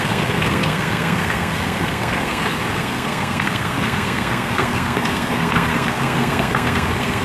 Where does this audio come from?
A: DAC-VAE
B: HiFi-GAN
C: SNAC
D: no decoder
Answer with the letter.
C